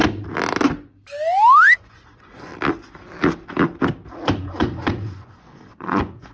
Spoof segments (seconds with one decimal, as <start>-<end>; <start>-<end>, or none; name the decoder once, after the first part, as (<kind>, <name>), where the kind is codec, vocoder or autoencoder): 1.8-2.5 (vocoder, Vocos); 4.4-6.3